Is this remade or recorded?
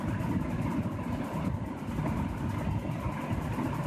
recorded